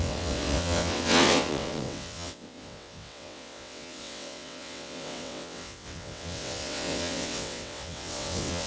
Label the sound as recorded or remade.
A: remade